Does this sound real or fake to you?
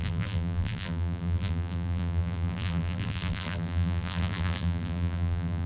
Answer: fake